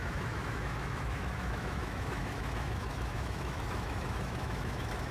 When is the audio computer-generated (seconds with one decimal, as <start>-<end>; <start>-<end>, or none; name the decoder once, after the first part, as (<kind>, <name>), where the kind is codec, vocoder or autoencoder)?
0.0-5.1 (autoencoder, DAC-VAE)